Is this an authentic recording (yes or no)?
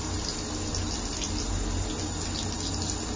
yes